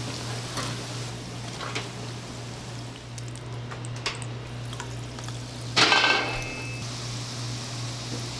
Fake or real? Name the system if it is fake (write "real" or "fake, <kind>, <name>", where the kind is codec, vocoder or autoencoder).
real